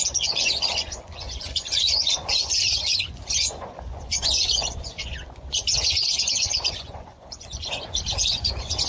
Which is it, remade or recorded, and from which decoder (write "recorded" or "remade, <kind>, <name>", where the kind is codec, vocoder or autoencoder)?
remade, vocoder, Vocos